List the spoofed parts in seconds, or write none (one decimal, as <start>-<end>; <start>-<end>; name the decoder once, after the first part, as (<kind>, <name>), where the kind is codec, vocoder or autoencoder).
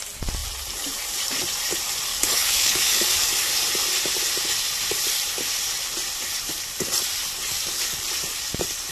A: 2.1-3.5 (codec, DAC); 7.4-8.0